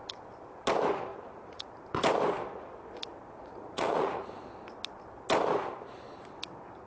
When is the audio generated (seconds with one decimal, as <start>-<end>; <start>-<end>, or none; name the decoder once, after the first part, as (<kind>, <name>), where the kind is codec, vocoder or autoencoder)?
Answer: 1.1-1.7 (vocoder, Vocos); 3.4-4.2